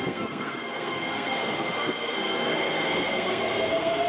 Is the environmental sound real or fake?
fake